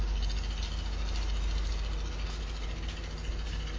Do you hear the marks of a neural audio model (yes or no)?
no